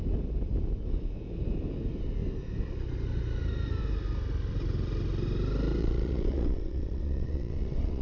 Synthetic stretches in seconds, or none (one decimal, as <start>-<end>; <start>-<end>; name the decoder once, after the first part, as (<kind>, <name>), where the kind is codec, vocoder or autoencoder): 5.8-8.0 (vocoder, WaveNeXt)